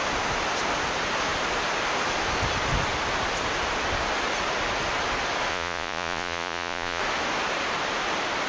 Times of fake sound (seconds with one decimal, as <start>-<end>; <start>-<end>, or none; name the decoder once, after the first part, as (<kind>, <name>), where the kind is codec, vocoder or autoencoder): 5.5-7.0 (vocoder, Vocos)